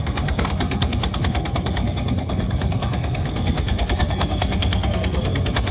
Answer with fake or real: fake